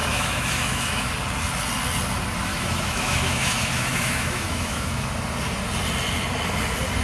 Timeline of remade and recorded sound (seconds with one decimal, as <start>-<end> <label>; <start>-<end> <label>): 0.0-1.1 remade; 1.1-2.5 recorded; 2.5-5.1 remade; 5.1-7.0 recorded